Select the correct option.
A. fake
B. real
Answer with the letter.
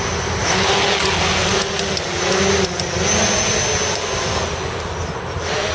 B